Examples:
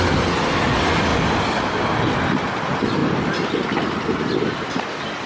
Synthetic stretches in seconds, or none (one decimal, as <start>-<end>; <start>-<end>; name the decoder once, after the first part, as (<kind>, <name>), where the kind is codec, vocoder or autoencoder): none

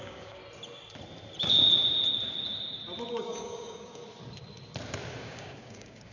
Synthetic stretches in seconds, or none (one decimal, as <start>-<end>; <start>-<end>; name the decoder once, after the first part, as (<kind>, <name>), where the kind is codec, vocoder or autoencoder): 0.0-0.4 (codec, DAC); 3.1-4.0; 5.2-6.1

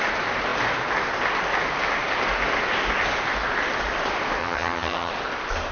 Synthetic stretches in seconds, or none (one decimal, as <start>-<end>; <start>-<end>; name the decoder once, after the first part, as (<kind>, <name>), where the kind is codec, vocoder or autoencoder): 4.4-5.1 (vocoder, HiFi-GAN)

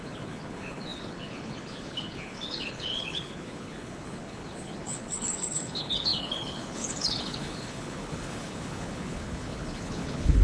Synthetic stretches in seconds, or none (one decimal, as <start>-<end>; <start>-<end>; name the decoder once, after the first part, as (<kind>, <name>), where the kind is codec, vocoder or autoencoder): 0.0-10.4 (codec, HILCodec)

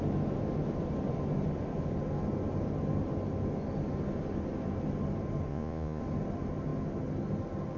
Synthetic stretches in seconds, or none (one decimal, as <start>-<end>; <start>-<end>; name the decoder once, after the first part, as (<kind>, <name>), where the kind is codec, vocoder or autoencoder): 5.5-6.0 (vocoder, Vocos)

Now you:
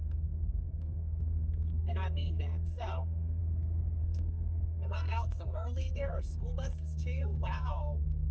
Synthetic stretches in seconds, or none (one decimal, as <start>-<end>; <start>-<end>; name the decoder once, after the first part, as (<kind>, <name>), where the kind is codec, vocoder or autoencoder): 0.0-3.4 (codec, SNAC); 4.0-8.3

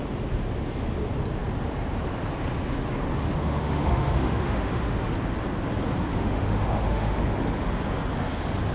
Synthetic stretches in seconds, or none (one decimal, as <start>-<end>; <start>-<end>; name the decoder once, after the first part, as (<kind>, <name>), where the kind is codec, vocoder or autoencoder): 3.4-5.1 (autoencoder, DAC-VAE); 6.1-7.2